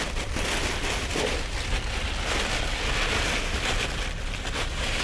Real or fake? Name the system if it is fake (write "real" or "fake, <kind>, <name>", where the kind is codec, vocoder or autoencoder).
real